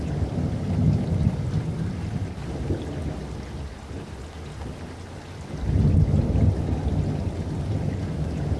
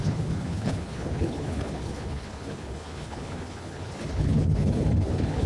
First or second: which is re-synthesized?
second